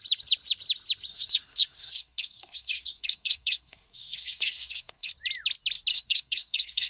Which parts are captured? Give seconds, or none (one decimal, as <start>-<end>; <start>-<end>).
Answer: 0.0-1.1; 5.1-5.9